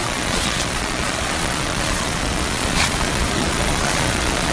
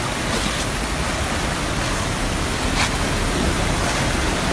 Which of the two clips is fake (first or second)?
first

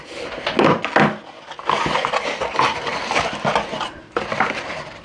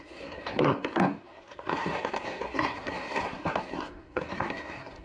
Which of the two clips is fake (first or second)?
second